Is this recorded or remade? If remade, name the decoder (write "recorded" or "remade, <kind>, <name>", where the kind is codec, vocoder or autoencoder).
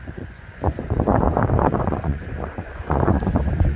remade, vocoder, Vocos